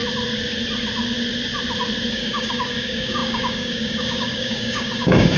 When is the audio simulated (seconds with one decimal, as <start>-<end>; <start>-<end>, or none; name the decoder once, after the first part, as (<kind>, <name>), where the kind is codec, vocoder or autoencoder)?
2.1-5.4 (codec, DAC)